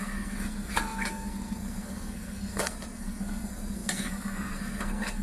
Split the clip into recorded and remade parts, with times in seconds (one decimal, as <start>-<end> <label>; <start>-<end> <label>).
0.0-5.2 remade